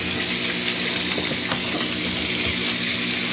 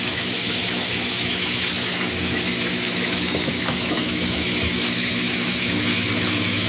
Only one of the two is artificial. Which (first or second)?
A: second